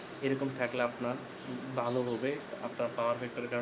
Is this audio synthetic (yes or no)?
yes